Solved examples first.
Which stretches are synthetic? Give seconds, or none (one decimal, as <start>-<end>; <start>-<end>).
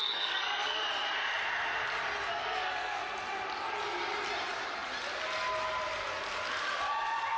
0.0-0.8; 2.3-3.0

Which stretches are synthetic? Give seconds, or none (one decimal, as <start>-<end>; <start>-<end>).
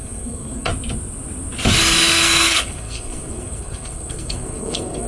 0.0-0.7; 1.8-5.1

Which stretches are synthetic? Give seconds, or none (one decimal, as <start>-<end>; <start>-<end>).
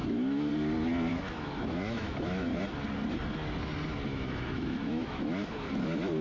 0.0-0.5; 1.1-2.6; 4.1-6.2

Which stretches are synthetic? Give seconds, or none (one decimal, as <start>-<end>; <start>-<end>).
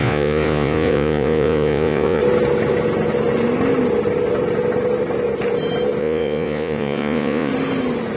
0.0-2.2; 6.0-7.5